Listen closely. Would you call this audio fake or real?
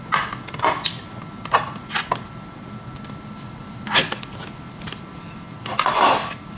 real